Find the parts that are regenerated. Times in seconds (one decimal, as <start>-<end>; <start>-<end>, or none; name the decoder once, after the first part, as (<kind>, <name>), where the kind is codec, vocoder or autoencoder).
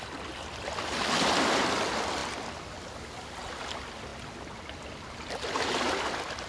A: none